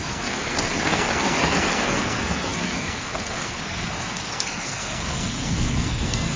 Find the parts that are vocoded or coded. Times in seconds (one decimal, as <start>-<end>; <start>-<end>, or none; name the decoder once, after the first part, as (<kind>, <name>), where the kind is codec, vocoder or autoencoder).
0.0-6.4 (codec, SNAC)